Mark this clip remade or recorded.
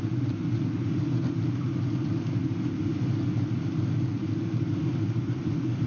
recorded